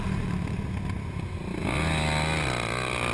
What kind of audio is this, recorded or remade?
recorded